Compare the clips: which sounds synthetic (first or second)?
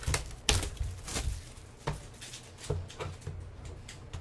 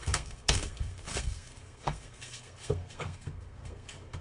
second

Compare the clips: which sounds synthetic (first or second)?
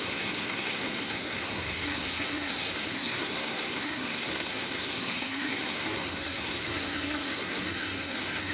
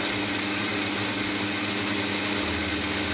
first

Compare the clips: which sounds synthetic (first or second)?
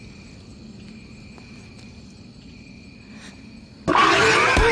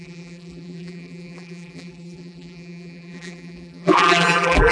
second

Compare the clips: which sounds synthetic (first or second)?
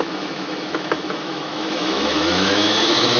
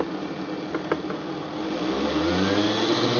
first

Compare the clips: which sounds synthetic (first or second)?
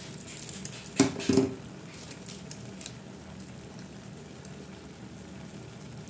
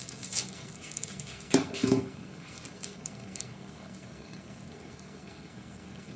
second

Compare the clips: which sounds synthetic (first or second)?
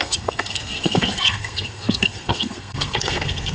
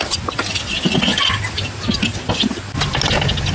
first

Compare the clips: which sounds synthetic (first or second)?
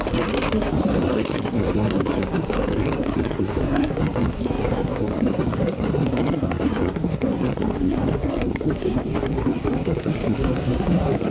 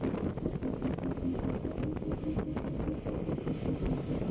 first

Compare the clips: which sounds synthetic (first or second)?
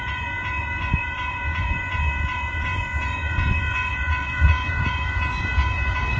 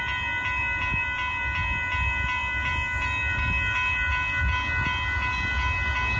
first